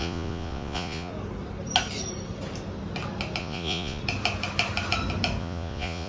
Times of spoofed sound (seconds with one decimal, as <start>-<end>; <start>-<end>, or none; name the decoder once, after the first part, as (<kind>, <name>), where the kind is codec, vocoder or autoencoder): 0.0-1.1 (vocoder, Vocos); 3.4-4.0; 5.4-6.1